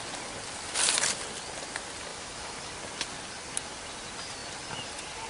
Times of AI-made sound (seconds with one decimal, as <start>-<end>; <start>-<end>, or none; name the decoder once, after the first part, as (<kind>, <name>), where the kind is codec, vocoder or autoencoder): 2.1-2.7 (autoencoder, DAC-VAE)